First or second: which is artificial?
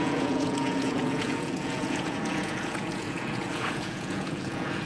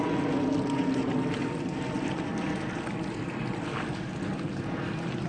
first